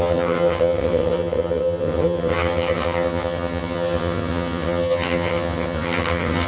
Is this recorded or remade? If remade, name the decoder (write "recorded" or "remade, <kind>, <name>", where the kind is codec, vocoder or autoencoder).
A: remade, vocoder, HiFi-GAN